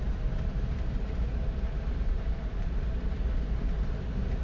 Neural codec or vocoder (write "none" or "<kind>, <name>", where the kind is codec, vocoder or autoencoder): vocoder, BigVGAN v2